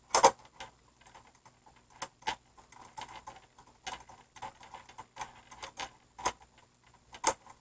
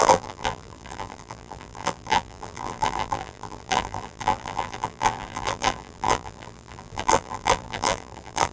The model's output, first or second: second